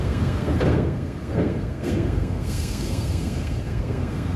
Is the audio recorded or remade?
remade